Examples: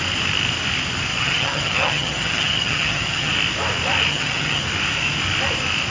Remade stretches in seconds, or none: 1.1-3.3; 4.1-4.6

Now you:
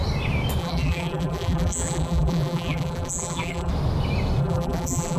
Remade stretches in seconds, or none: 0.6-3.7; 4.4-5.2

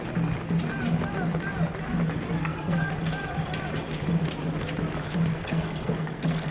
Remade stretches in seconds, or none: 2.4-2.9; 5.3-6.5

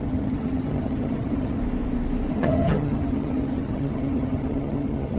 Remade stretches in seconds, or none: 0.0-1.6; 2.3-5.2

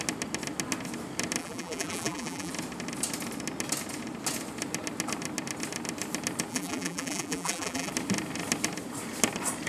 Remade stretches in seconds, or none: 1.4-2.5; 6.5-7.9